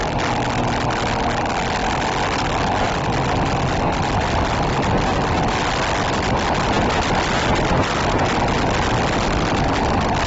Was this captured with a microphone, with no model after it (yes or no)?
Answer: yes